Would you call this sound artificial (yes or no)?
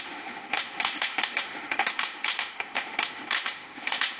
yes